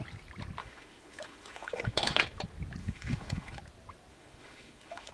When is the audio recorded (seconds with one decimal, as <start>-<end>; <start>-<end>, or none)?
0.0-0.6; 2.2-2.8; 3.6-4.1